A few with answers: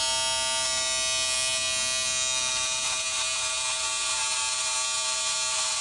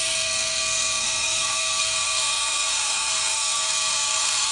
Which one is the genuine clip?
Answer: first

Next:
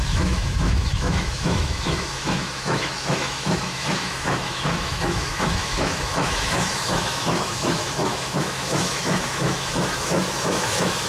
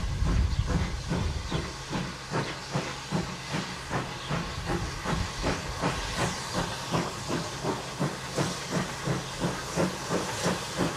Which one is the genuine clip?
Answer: second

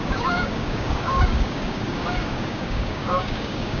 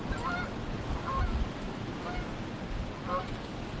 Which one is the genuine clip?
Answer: second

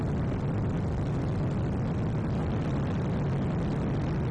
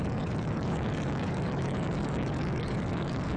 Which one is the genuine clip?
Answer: first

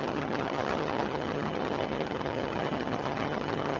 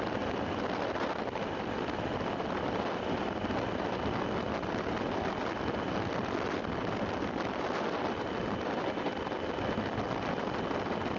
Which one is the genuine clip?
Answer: second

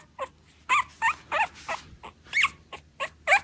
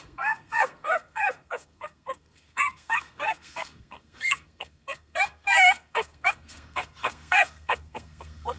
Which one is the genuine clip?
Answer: first